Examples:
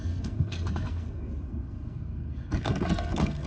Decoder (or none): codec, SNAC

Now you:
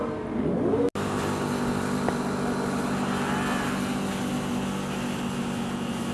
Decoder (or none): none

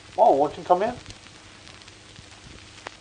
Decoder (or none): none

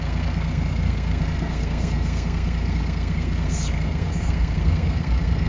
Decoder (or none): codec, SNAC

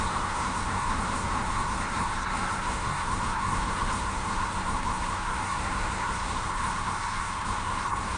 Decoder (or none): codec, SNAC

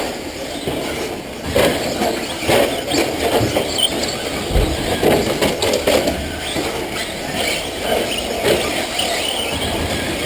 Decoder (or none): none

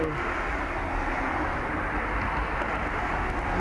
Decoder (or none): none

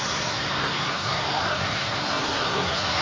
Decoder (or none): codec, SNAC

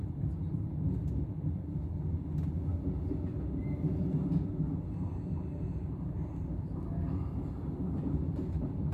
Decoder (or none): none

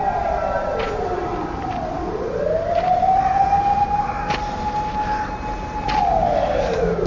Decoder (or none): none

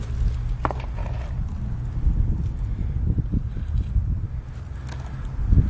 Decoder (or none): none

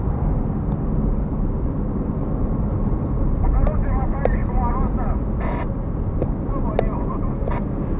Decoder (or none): none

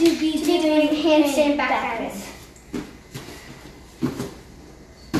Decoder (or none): none